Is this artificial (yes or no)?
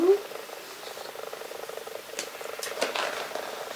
no